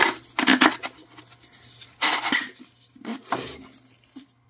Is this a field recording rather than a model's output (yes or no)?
yes